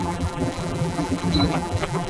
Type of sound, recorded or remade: remade